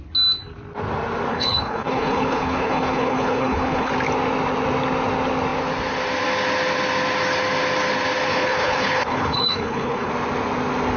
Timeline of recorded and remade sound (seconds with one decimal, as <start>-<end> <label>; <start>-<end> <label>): 0.0-1.3 recorded; 1.3-3.9 remade; 3.9-8.3 recorded; 8.3-10.1 remade; 10.1-11.0 recorded